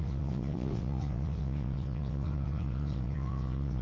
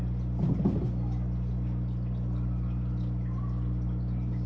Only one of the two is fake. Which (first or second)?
first